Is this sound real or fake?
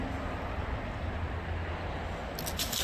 real